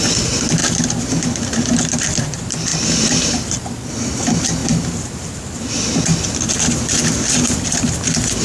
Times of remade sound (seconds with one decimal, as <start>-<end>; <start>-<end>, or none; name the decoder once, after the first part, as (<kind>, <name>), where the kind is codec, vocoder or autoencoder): 0.0-0.6 (vocoder, BigVGAN v2); 2.2-8.4